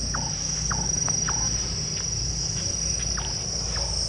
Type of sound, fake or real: real